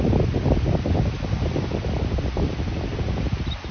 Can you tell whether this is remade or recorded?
recorded